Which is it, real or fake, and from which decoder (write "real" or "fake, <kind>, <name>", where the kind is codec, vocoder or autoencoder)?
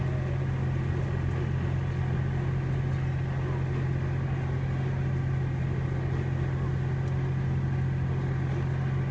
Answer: real